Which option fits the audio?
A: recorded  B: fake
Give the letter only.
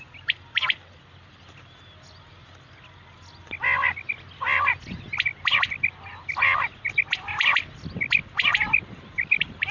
A